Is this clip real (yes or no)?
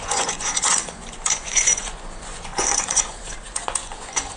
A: no